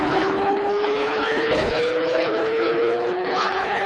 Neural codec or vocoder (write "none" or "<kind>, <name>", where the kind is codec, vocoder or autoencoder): codec, HILCodec